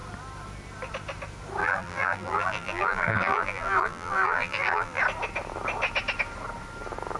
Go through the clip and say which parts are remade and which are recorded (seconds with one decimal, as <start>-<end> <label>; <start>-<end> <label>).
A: 0.0-1.6 recorded; 1.6-5.0 remade; 5.0-7.2 recorded